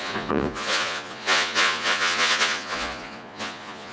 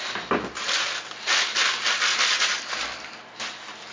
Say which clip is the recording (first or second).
second